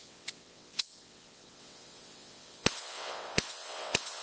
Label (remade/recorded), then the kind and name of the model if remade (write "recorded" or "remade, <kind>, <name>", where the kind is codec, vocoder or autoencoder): remade, vocoder, WaveNeXt